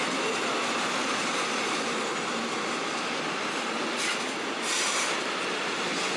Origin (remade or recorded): recorded